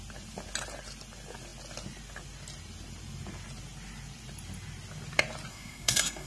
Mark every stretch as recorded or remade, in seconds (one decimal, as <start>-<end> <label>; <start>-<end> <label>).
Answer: 0.0-5.5 recorded; 5.5-6.3 remade